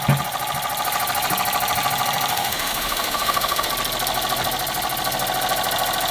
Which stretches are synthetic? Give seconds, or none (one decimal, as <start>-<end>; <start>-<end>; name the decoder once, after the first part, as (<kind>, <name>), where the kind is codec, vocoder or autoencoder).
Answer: 2.3-3.7 (autoencoder, DAC-VAE)